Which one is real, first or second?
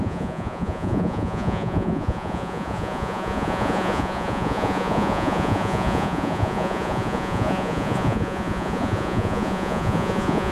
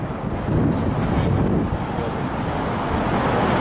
second